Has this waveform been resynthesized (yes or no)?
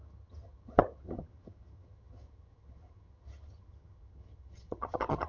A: yes